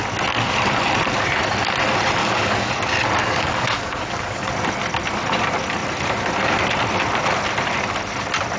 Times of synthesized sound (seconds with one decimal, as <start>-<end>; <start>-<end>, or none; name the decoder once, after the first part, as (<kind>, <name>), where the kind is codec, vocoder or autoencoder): 2.2-2.7 (codec, DAC); 3.2-4.5